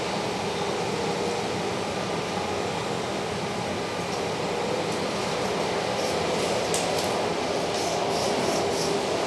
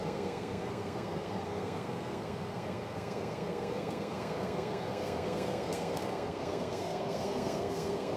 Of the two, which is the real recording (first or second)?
first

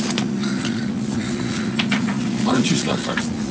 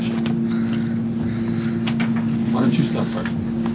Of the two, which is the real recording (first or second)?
second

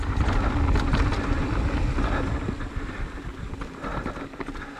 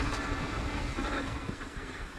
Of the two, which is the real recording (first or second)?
first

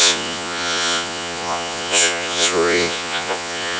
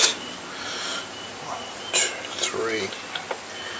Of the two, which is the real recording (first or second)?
second